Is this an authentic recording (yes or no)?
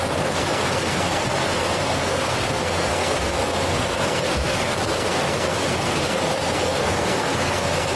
no